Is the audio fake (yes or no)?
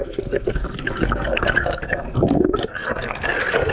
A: yes